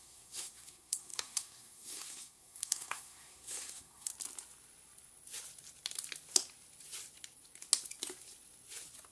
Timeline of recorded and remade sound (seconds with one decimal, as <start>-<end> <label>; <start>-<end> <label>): 0.0-4.1 remade; 4.1-9.1 recorded